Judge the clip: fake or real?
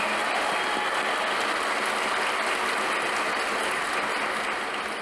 real